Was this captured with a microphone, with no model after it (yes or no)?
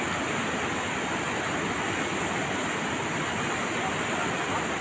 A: yes